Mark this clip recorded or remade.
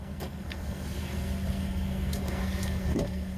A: remade